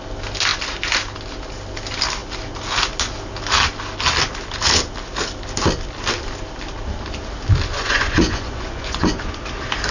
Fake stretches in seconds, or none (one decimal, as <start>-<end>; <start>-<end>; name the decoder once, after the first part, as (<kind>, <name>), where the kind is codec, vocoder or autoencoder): 7.7-9.4 (vocoder, Vocos)